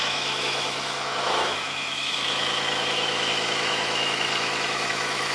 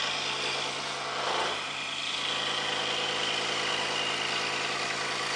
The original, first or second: second